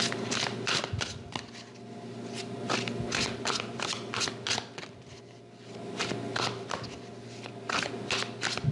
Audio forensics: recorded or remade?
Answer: recorded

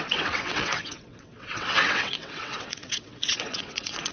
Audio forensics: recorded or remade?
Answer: remade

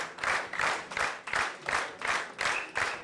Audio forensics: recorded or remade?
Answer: remade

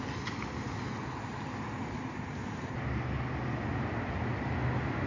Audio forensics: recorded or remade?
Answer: recorded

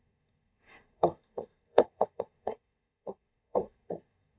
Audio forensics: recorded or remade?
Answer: remade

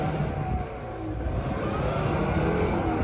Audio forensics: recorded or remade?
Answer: recorded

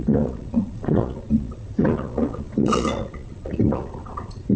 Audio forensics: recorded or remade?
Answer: remade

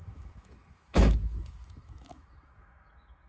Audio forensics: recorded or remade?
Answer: remade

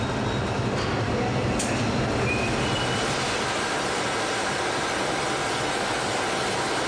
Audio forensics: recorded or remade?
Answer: recorded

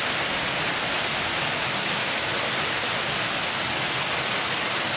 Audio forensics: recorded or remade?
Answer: recorded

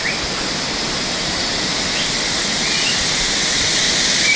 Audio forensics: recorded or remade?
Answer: recorded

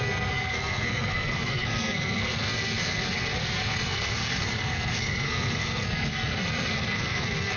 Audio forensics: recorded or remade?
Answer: remade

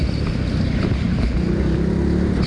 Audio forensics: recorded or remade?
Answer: recorded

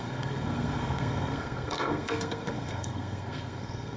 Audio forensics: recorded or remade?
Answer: remade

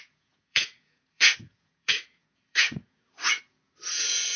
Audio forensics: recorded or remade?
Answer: remade